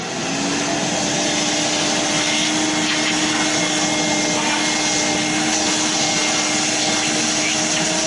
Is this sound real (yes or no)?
yes